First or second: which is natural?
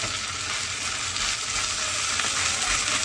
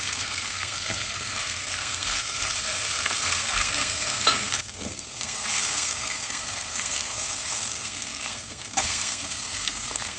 first